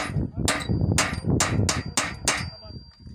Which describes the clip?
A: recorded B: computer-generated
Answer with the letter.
A